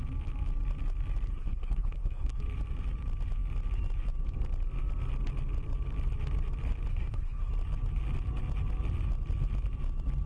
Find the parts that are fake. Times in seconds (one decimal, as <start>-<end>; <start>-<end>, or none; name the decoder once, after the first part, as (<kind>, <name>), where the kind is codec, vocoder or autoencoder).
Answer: 1.3-2.4 (codec, SNAC); 6.9-7.5